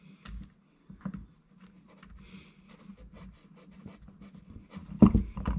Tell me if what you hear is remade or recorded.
recorded